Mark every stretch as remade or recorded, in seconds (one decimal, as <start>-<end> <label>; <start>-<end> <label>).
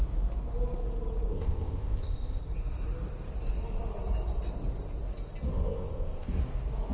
0.0-1.3 recorded; 1.3-2.4 remade; 2.4-5.5 recorded; 5.5-6.4 remade; 6.4-6.9 recorded